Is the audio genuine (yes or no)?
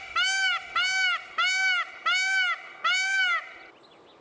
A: yes